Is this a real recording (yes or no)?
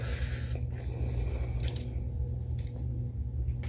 yes